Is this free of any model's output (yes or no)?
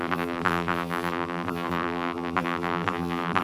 no